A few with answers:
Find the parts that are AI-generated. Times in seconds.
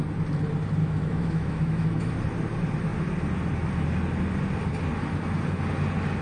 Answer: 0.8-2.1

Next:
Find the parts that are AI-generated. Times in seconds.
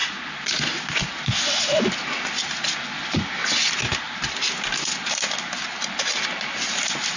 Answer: none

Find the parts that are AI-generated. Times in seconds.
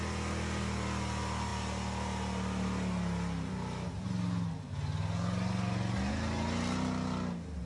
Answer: none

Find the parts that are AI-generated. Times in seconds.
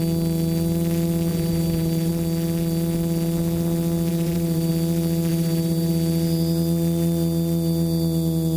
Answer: 1.3-2.1; 4.1-4.7; 5.3-5.9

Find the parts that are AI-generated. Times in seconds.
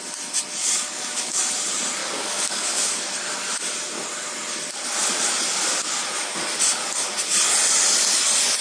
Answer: 0.6-1.4; 2.0-2.9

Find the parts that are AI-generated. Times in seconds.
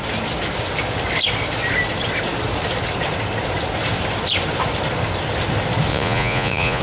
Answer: 5.9-6.8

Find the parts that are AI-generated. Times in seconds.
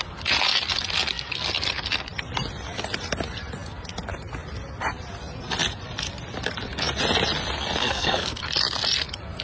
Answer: 7.8-8.4